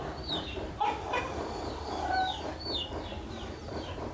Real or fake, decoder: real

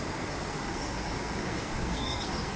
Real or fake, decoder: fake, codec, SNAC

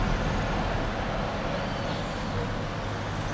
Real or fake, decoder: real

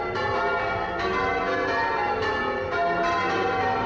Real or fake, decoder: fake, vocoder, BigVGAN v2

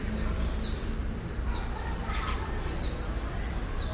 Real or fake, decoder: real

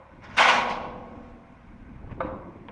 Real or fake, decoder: real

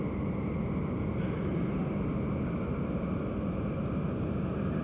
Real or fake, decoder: real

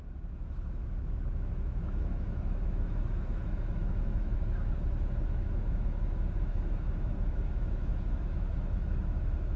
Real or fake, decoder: fake, autoencoder, DAC-VAE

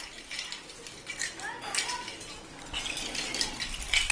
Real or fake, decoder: real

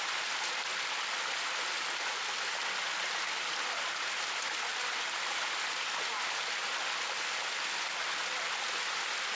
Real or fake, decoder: real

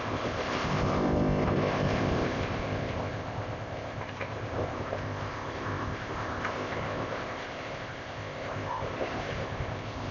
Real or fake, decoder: fake, codec, ZipCodec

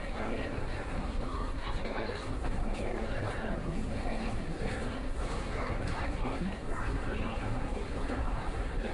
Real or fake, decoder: fake, codec, SNAC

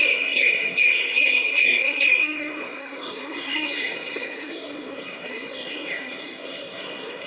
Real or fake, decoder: fake, codec, SNAC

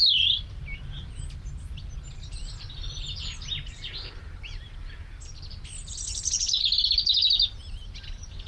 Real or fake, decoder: real